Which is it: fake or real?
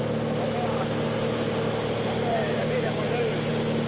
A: real